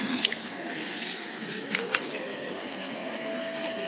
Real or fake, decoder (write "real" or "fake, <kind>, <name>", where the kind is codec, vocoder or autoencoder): fake, codec, SNAC